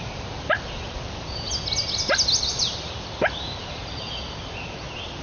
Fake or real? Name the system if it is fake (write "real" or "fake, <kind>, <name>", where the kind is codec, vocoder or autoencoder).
real